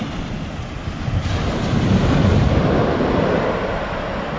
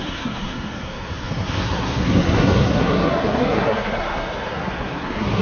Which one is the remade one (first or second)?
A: second